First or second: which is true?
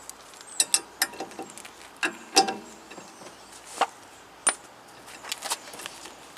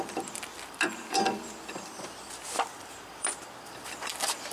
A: first